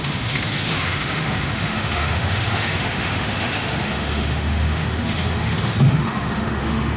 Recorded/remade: remade